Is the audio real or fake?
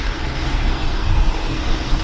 fake